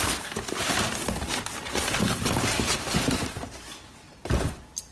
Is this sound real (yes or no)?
yes